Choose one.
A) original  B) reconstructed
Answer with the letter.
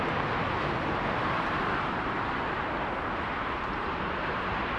A